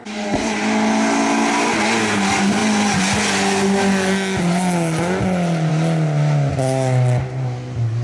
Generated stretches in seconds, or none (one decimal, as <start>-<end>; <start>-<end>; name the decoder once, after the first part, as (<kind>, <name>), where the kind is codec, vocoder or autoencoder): none